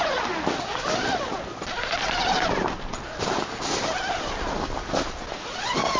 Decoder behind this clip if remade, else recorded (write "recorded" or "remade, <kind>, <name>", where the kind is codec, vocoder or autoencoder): recorded